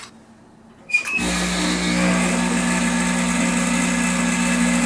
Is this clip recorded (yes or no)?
yes